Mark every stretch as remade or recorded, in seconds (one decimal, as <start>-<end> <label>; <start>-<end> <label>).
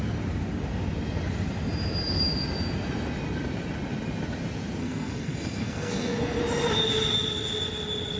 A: 0.0-4.8 recorded; 4.8-6.4 remade; 6.4-8.2 recorded